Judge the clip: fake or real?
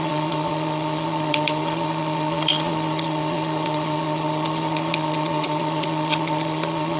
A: fake